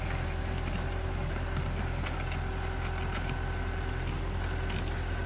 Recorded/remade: recorded